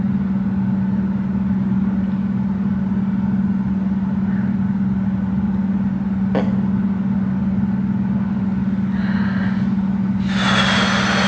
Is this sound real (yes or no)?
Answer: yes